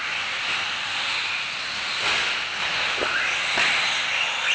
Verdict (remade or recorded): recorded